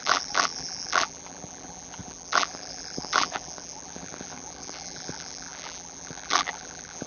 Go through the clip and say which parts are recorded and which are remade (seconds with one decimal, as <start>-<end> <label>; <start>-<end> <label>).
0.0-7.1 remade